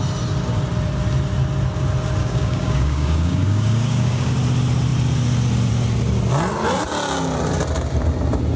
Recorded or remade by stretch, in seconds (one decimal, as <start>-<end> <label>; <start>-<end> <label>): 0.0-2.2 recorded; 2.2-4.3 remade; 4.3-8.6 recorded